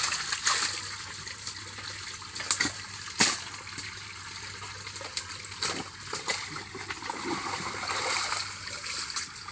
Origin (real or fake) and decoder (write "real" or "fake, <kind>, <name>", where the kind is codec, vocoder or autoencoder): real